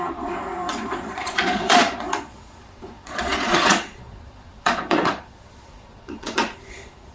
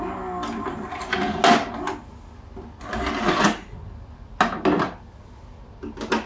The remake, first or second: first